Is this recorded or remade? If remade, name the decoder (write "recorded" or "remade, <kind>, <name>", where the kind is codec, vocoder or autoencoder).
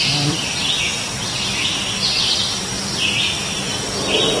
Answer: recorded